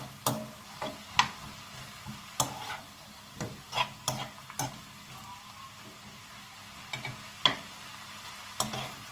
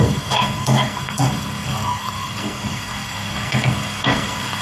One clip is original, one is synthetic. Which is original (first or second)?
first